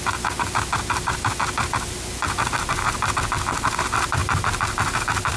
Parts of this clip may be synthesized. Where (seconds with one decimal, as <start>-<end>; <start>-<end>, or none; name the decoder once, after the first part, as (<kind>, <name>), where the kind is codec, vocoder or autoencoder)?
none